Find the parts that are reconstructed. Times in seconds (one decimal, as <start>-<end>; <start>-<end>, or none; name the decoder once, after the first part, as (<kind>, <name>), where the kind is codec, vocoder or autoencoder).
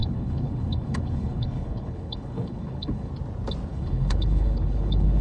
0.0-3.1 (codec, HILCodec); 3.7-5.2